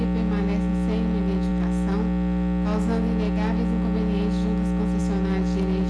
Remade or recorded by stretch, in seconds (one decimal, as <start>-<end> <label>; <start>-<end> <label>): 0.0-5.9 recorded